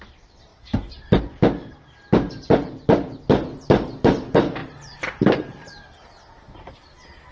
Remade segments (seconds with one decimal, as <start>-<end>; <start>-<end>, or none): 0.5-1.3; 4.6-5.9